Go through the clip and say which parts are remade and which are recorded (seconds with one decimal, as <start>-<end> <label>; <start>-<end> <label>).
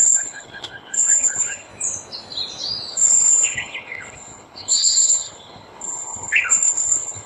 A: 0.0-1.7 remade; 1.7-2.9 recorded; 2.9-7.3 remade